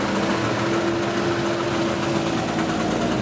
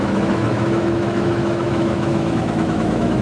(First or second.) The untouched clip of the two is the first